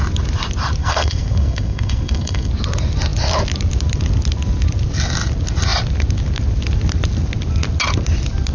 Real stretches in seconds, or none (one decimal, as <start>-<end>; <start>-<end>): 0.0-0.8; 2.5-8.5